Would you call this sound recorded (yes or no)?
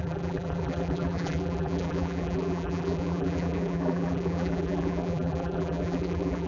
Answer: no